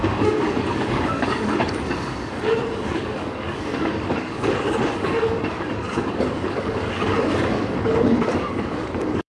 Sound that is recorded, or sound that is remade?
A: remade